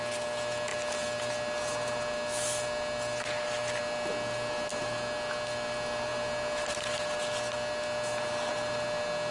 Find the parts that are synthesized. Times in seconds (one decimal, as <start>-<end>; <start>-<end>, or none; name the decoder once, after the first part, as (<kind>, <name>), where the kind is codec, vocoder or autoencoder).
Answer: none